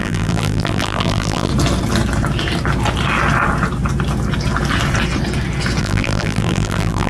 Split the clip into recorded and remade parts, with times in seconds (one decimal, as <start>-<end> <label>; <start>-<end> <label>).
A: 0.0-1.5 remade; 1.5-5.8 recorded; 5.8-7.1 remade